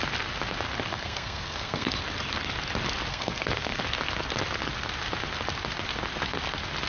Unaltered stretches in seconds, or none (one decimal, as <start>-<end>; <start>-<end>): 0.0-0.9; 1.9-3.1; 3.8-6.9